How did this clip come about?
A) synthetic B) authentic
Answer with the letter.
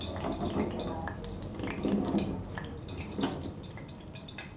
A